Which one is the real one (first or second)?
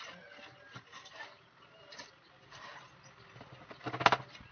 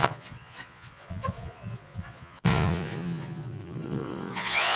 first